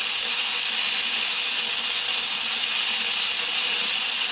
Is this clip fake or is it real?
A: real